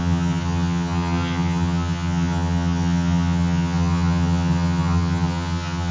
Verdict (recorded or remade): remade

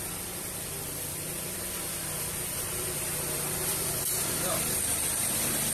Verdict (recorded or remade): remade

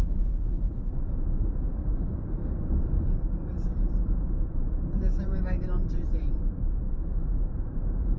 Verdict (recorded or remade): remade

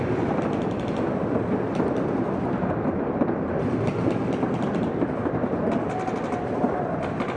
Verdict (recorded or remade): recorded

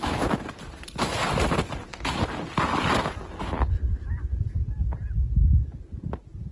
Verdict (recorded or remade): recorded